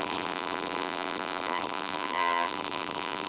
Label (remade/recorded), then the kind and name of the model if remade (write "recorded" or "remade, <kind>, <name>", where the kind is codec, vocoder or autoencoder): remade, vocoder, BigVGAN v2